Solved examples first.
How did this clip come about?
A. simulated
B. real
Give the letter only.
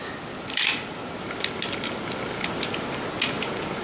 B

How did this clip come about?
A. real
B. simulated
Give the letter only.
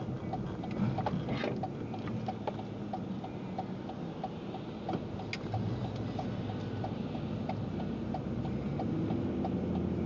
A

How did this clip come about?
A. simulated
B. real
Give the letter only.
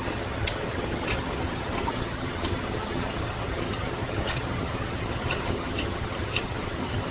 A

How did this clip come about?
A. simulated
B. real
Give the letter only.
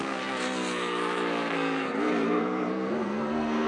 A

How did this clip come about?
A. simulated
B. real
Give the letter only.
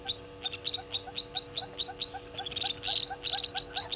B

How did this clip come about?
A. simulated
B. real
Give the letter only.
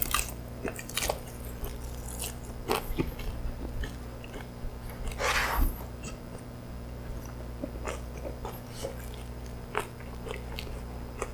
B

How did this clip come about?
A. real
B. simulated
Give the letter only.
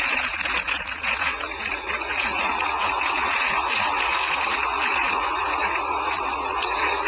B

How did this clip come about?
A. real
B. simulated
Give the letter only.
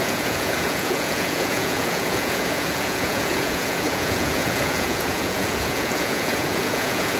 B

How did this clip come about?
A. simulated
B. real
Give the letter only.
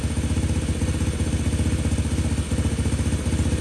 B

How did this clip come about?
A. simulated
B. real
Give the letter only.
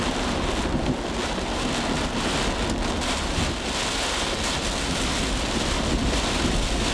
B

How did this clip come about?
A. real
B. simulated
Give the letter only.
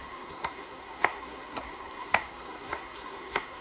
B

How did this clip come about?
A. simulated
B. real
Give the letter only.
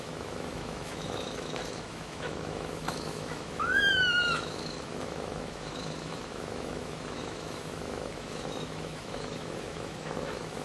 A